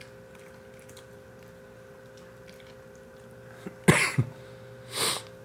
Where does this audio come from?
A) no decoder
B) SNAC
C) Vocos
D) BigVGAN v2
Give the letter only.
A